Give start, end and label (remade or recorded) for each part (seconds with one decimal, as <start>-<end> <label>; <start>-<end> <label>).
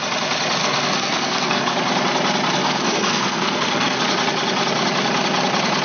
0.0-0.6 recorded; 0.6-1.6 remade; 1.6-2.6 recorded; 2.6-4.0 remade; 4.0-5.8 recorded